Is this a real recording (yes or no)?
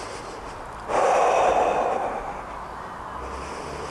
yes